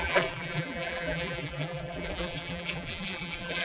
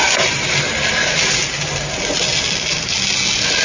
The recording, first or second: second